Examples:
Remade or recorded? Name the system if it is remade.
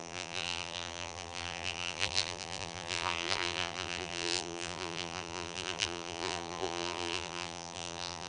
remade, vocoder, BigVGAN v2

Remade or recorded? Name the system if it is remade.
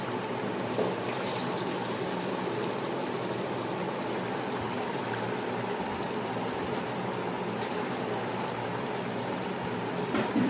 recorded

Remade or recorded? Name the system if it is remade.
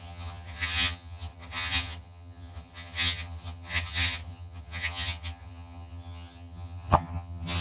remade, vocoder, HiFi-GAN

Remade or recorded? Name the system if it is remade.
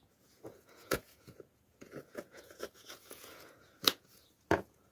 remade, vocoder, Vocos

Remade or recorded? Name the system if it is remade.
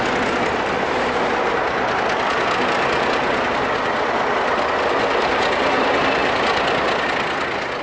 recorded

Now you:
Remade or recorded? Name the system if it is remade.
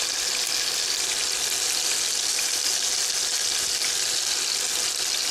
recorded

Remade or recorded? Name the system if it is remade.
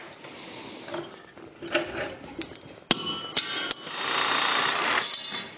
recorded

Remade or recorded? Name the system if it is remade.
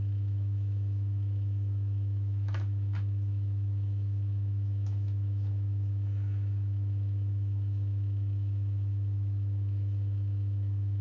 remade, autoencoder, DAC-VAE